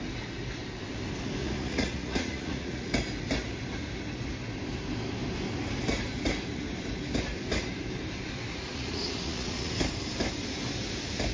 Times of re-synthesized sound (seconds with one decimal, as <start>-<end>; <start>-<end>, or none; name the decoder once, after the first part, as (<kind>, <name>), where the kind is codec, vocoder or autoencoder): 1.4-2.9 (vocoder, Vocos); 8.7-9.7